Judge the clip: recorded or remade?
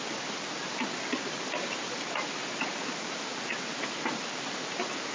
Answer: recorded